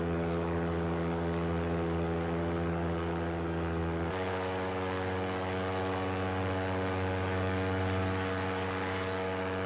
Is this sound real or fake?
fake